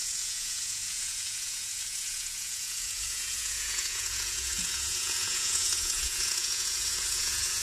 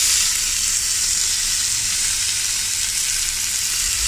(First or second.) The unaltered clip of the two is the second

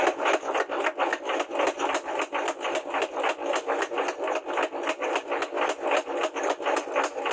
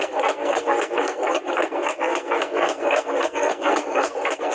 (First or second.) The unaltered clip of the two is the first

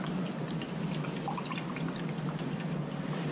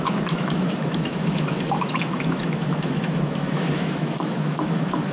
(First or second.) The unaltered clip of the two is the first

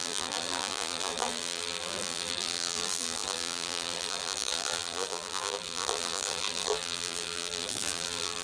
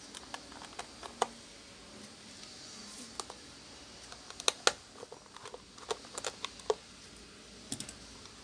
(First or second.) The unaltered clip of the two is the second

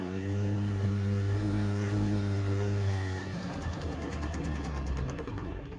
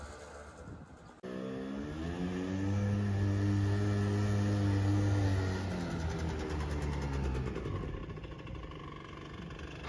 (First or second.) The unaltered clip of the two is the second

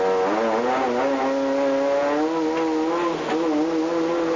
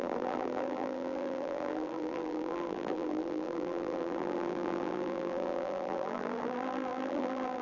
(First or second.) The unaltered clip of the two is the first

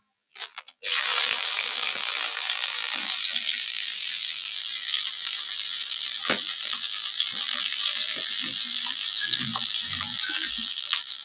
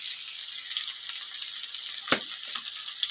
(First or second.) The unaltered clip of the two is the second